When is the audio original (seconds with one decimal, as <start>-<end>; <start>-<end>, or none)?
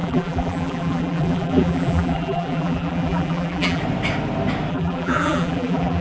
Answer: 3.8-4.7